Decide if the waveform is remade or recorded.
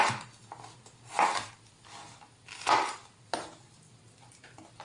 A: recorded